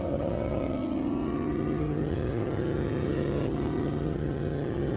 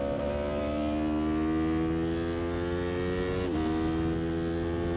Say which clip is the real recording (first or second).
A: second